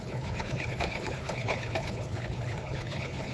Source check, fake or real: fake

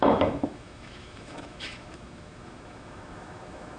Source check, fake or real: fake